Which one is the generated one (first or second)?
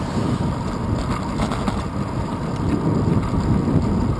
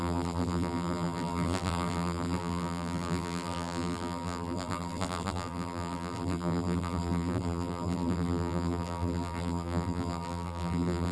second